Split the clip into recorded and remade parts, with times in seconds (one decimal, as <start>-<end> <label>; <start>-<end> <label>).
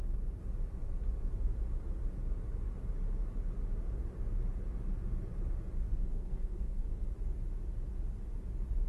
0.0-6.0 recorded; 6.0-6.9 remade; 6.9-8.9 recorded